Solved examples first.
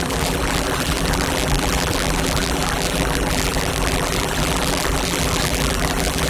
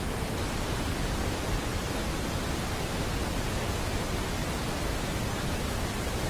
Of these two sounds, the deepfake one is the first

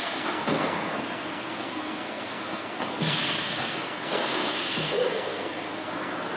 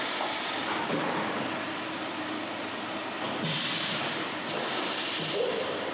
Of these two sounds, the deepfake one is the first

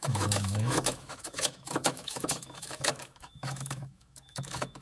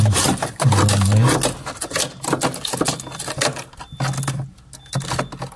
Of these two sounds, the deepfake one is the first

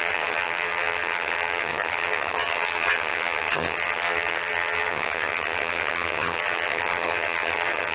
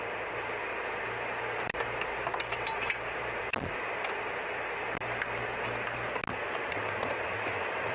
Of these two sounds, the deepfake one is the first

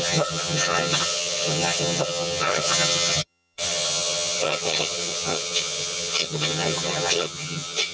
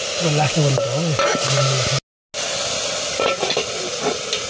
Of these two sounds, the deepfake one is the first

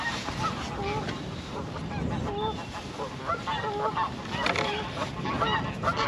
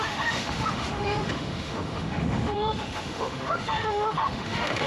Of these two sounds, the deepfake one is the second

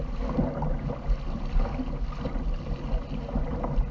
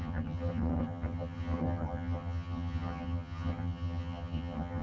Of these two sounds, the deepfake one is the second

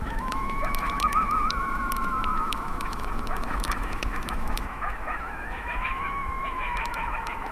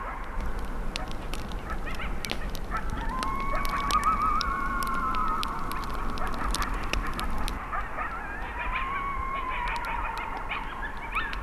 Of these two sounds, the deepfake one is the first